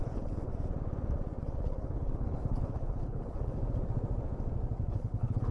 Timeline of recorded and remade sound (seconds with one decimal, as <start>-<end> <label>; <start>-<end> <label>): 0.0-0.5 remade; 0.5-1.4 recorded; 1.4-3.6 remade; 3.6-4.9 recorded; 4.9-5.5 remade